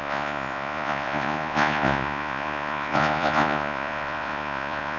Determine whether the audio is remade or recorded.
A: remade